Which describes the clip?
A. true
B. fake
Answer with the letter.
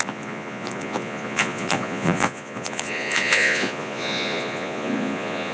B